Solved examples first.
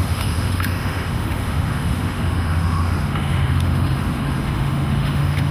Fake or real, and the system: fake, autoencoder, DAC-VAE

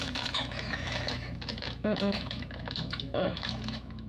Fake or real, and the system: fake, autoencoder, DAC-VAE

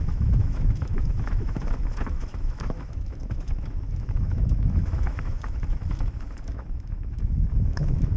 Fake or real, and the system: fake, autoencoder, DAC-VAE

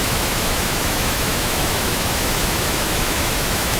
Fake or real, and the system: fake, autoencoder, DAC-VAE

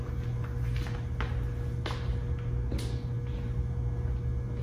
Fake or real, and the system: real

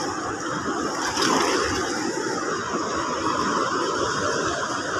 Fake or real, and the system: real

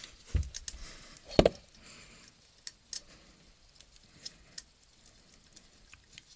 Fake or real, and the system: real